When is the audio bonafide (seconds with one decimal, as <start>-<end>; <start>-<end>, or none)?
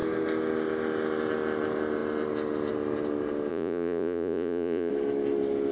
0.0-3.5; 4.9-5.7